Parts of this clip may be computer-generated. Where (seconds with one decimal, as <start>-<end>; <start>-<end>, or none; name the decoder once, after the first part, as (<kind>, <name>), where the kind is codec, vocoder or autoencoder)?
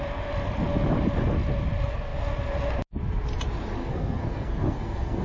3.8-5.2 (codec, SNAC)